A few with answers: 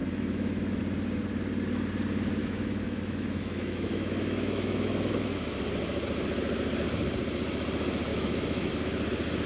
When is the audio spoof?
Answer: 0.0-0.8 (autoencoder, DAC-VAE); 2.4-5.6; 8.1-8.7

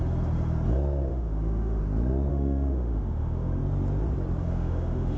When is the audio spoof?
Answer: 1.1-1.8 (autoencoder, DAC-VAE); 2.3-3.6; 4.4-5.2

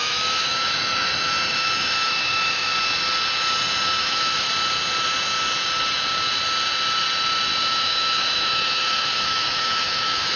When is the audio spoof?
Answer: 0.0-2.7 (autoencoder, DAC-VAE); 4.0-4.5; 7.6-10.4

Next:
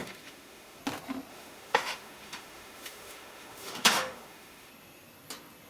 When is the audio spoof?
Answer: 0.0-0.8 (autoencoder, DAC-VAE); 1.3-4.7

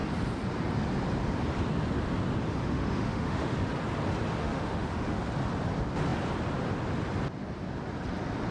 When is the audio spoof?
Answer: 2.6-3.7 (autoencoder, DAC-VAE); 4.4-5.2

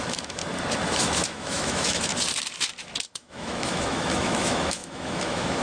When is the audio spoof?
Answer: 0.0-0.4 (autoencoder, DAC-VAE); 1.0-2.1; 3.1-5.6

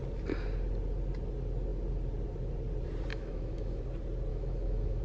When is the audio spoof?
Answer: 3.1-3.8 (autoencoder, DAC-VAE); 4.3-5.0